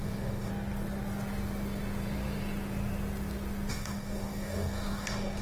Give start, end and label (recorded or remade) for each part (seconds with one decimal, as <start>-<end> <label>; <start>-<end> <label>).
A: 0.0-0.5 remade; 0.5-3.7 recorded; 3.7-5.4 remade